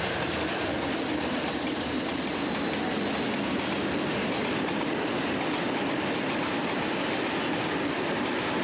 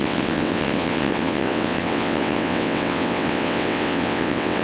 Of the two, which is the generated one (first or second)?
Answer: second